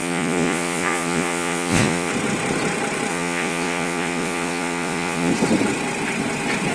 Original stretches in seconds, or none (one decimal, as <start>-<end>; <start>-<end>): 2.1-3.1; 5.3-6.7

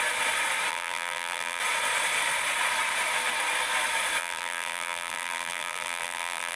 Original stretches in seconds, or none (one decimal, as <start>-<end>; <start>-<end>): 0.0-0.7; 1.6-4.2

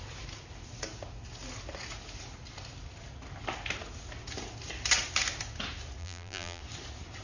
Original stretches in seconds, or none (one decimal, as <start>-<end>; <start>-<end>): 0.0-6.0; 6.6-7.2

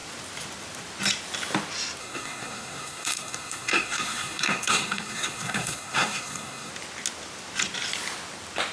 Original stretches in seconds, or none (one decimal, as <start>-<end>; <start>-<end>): 0.0-2.0; 6.7-8.7

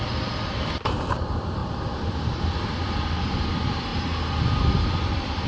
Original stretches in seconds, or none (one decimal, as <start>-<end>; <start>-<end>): 3.9-4.6

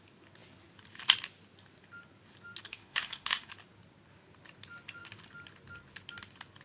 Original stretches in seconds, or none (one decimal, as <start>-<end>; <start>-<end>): 0.0-2.7; 3.5-6.6

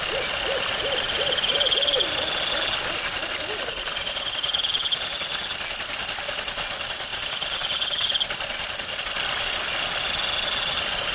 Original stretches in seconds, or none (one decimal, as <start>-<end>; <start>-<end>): 0.0-11.1

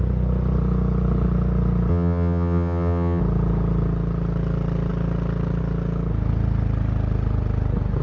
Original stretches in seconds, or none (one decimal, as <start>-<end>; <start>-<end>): 0.0-1.9; 3.2-8.0